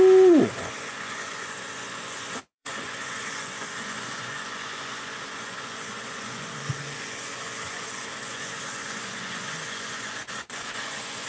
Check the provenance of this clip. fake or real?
fake